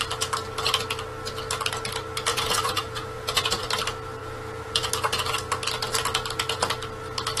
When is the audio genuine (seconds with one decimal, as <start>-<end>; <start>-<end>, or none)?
0.0-2.3; 3.6-4.2; 4.9-7.4